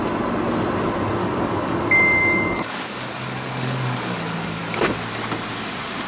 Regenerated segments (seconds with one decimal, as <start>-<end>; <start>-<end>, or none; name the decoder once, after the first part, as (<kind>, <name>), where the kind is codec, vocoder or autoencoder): 1.2-1.8 (codec, DAC); 2.2-4.6